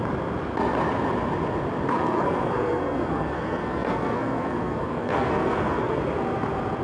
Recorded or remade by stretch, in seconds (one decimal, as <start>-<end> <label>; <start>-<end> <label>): 0.0-1.9 recorded; 1.9-6.0 remade; 6.0-6.8 recorded